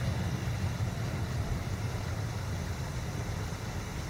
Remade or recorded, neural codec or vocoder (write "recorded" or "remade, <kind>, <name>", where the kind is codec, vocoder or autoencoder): remade, vocoder, BigVGAN v2